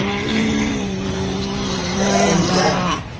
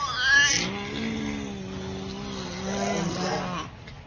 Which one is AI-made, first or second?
first